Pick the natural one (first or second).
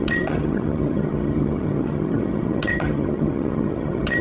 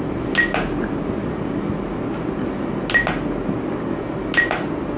second